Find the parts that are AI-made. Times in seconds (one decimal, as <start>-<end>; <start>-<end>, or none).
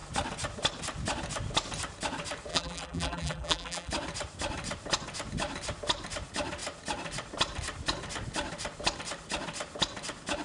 2.5-3.9